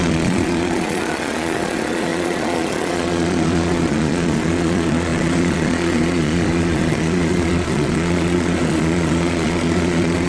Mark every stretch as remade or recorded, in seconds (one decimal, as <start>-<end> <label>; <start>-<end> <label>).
0.0-10.3 remade